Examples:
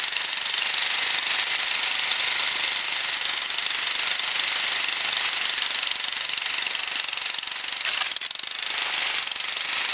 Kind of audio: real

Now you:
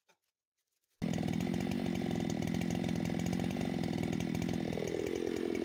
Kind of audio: real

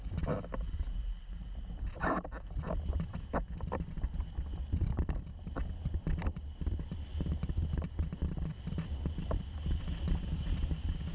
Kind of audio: real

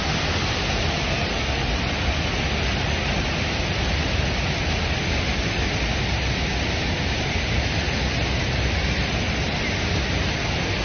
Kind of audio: real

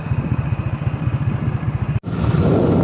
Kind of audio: real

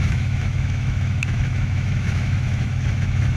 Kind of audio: fake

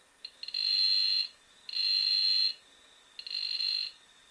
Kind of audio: real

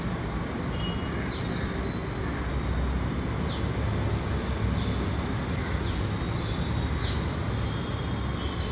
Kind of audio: real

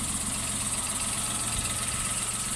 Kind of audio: real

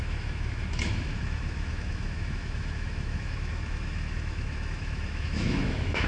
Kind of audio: fake